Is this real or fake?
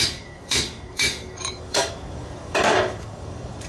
fake